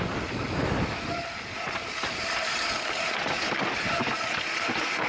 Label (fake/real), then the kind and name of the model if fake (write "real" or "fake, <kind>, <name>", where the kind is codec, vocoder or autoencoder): real